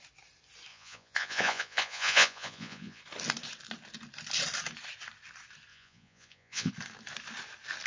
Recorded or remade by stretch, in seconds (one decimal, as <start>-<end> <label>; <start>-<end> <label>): 0.0-0.7 recorded; 0.7-3.0 remade; 3.0-5.7 recorded; 5.7-6.7 remade; 6.7-7.9 recorded